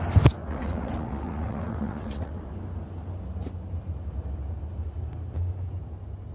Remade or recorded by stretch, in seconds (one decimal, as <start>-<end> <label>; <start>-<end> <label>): 0.0-0.4 recorded; 0.4-2.4 remade; 2.4-6.3 recorded

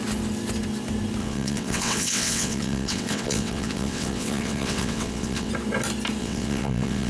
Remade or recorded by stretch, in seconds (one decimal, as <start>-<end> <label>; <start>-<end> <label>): 0.0-1.2 recorded; 1.2-5.5 remade; 5.5-6.2 recorded; 6.2-7.1 remade

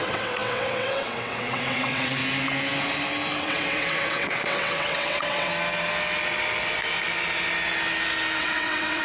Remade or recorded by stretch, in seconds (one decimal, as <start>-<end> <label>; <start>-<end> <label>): 0.0-2.2 remade; 2.2-3.4 recorded; 3.4-5.5 remade; 5.5-8.4 recorded; 8.4-9.0 remade

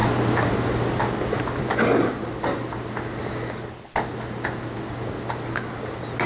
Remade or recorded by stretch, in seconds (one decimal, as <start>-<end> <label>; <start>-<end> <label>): 0.0-6.3 recorded

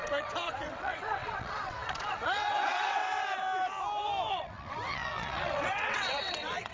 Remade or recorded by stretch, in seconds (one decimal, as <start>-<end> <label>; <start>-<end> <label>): 0.0-3.0 remade; 3.0-4.3 recorded; 4.3-6.7 remade